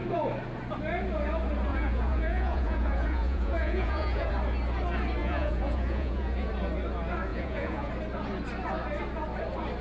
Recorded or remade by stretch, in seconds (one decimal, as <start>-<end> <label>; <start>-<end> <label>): 0.0-1.7 recorded; 1.7-4.3 remade; 4.3-5.2 recorded; 5.2-6.5 remade; 6.5-7.3 recorded; 7.3-7.9 remade; 7.9-9.8 recorded